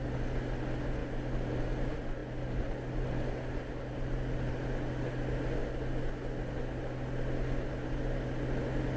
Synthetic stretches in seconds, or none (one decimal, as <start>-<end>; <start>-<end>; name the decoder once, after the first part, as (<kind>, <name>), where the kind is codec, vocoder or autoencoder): none